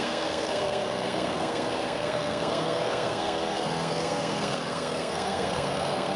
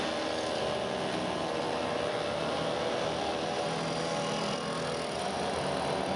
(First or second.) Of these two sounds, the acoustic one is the second